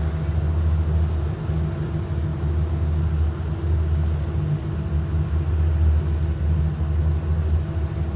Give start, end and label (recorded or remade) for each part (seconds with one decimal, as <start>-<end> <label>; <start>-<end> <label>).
0.0-8.2 recorded